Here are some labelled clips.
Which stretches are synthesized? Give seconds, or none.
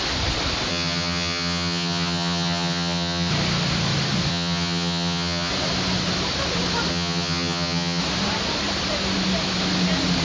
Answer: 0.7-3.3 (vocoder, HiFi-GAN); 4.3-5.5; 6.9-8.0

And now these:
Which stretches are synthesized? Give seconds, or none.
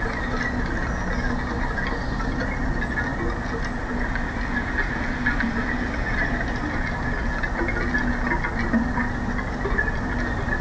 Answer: none